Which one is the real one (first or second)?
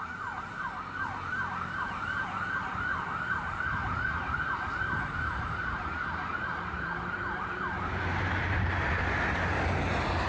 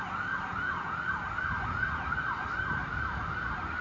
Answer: second